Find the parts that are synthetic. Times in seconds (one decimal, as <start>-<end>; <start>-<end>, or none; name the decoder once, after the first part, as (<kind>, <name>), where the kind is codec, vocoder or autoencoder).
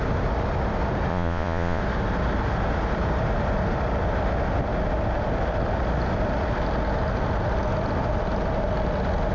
1.1-1.8 (vocoder, Vocos)